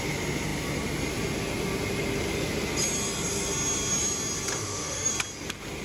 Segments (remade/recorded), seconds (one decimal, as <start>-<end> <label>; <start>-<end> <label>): 0.0-4.6 recorded; 4.6-5.1 remade; 5.1-5.8 recorded